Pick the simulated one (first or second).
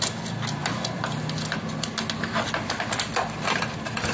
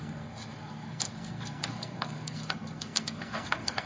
second